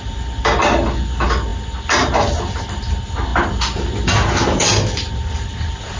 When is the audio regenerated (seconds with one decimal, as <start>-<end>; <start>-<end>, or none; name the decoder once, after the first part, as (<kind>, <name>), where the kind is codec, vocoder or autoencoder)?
none